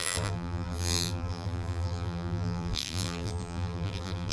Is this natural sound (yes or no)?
no